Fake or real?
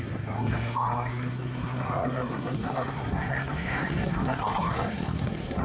fake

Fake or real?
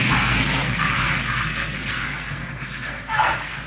fake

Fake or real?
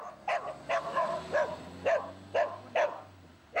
real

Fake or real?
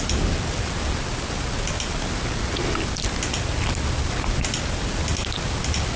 real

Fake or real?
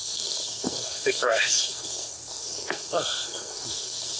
fake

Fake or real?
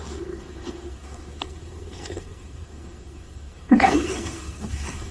fake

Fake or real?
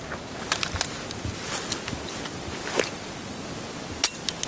real